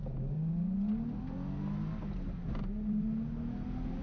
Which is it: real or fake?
real